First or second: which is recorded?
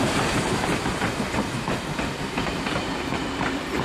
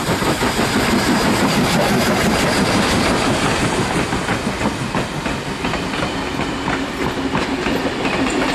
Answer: second